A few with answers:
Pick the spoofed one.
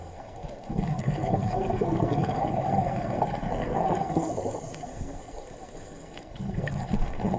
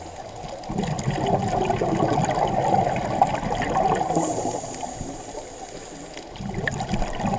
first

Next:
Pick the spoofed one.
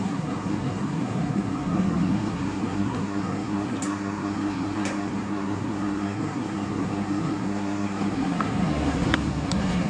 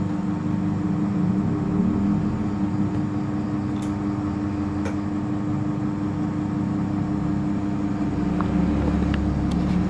first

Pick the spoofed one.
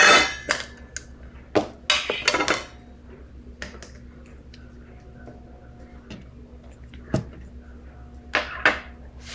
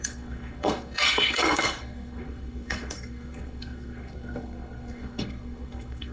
second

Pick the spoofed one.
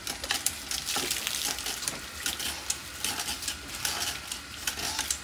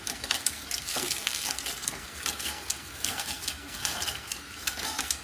second